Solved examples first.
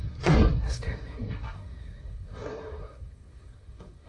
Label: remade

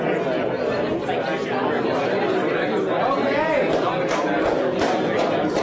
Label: recorded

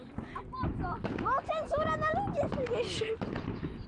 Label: recorded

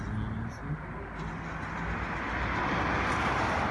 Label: recorded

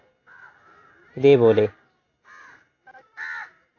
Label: recorded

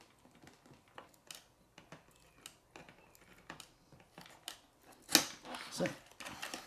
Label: recorded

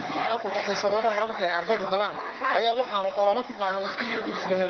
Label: remade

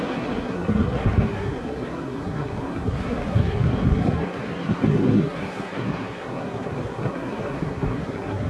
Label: remade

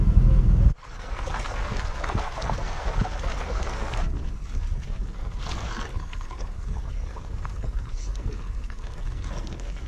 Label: remade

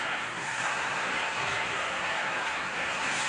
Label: remade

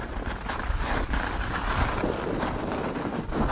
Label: recorded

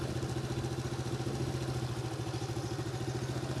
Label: recorded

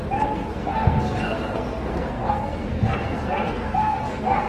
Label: remade